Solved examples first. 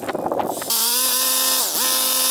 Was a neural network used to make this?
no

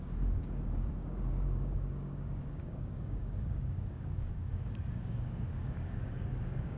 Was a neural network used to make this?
yes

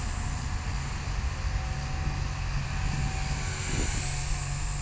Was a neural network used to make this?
no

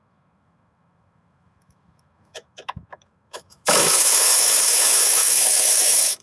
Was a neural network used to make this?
yes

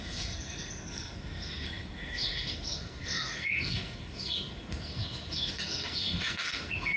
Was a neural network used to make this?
yes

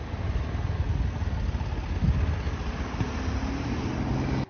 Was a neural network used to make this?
no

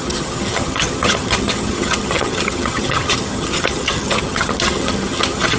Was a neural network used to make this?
yes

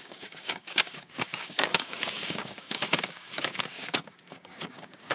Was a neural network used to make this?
yes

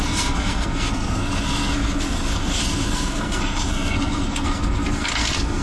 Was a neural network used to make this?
yes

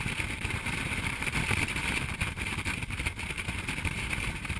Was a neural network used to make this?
yes